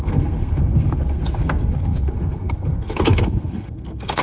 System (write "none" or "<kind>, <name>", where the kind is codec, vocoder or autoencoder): codec, SNAC